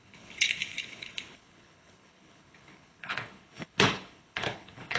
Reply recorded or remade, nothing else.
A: remade